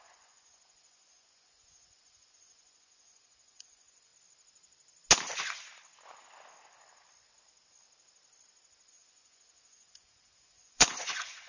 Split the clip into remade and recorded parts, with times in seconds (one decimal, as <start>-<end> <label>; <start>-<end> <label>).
0.0-4.1 remade; 4.1-8.9 recorded; 8.9-11.5 remade